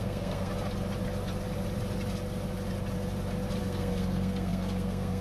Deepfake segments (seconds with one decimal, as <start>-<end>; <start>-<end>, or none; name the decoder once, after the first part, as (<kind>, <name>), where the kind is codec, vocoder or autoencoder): 0.0-0.5 (codec, SNAC); 3.6-5.2